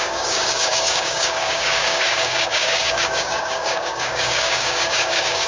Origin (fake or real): fake